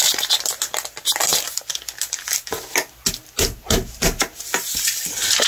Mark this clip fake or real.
real